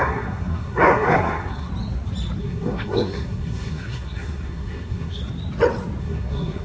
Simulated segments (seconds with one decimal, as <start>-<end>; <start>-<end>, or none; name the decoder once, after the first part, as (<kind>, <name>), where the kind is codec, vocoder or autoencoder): 0.0-1.7 (codec, SNAC); 2.4-5.2; 6.0-6.6